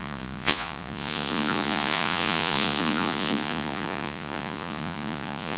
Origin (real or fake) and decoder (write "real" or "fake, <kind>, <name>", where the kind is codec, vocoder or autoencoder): fake, vocoder, Vocos